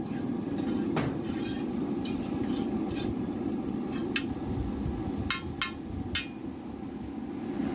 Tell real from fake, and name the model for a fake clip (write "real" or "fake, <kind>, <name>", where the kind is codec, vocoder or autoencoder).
real